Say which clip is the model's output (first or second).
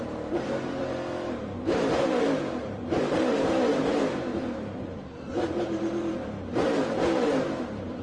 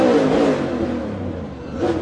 first